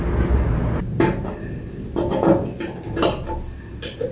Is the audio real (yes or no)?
yes